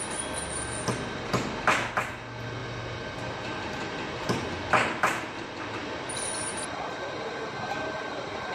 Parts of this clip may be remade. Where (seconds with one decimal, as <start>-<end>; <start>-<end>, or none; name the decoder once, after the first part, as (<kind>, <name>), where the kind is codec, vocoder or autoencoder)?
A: none